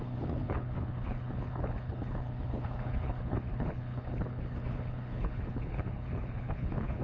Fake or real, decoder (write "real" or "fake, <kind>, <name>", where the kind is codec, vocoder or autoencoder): fake, codec, HILCodec